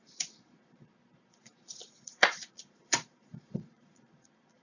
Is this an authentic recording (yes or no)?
no